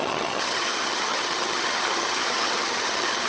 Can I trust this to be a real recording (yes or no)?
no